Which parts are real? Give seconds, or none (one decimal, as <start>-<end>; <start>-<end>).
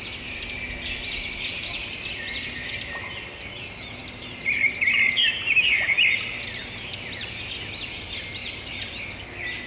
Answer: 0.0-4.0; 5.9-8.4; 9.0-9.7